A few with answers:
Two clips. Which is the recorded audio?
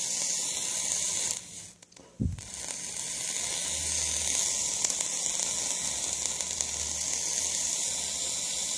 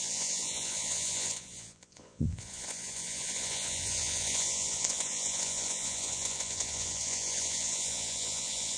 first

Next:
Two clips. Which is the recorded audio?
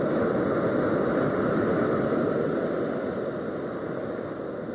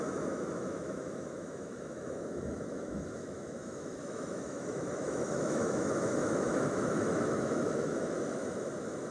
first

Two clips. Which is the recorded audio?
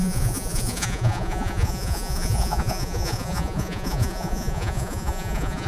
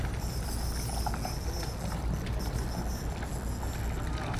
second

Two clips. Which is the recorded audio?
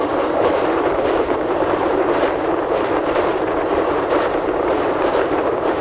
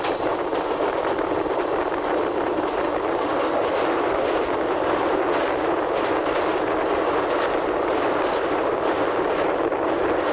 second